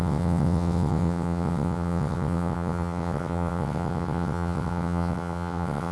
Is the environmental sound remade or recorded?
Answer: remade